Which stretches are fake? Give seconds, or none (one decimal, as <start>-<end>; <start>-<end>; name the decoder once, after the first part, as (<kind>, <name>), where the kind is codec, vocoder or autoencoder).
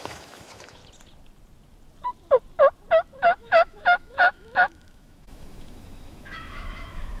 0.0-0.8 (autoencoder, DAC-VAE); 3.4-7.2